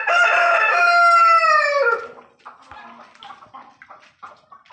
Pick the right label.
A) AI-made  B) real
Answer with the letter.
B